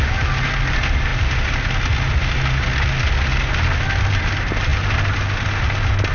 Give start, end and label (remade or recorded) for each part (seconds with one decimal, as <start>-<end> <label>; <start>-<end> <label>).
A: 0.0-6.1 recorded